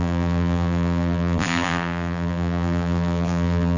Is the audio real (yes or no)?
no